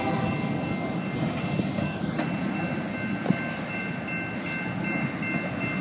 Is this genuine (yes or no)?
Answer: yes